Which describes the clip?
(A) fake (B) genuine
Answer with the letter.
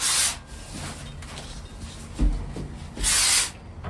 B